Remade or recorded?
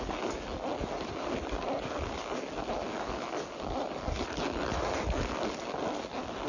recorded